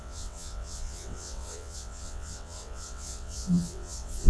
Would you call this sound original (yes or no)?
no